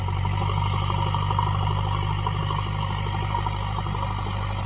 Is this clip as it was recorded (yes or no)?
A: yes